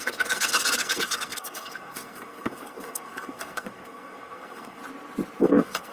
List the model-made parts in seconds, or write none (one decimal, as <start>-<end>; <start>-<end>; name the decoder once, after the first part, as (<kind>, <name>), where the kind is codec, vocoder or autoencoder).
0.0-4.8 (codec, SNAC); 5.4-5.9